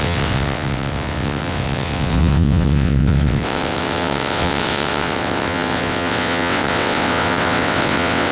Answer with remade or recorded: remade